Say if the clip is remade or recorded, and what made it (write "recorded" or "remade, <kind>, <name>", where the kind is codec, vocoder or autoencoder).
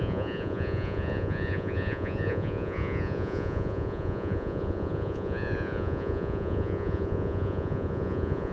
remade, vocoder, Vocos